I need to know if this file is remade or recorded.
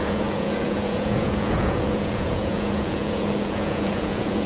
remade